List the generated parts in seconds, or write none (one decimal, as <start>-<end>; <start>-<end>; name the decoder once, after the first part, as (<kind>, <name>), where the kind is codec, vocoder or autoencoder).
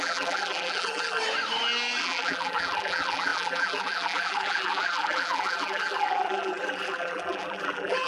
0.0-1.2 (vocoder, BigVGAN v2); 2.0-8.1